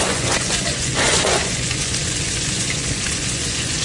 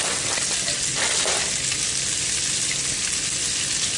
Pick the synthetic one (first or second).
first